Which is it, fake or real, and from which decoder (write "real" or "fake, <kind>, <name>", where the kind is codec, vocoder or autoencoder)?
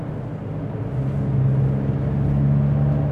real